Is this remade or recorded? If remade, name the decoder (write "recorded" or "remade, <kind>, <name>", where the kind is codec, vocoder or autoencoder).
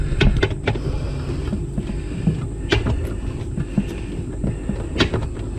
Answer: recorded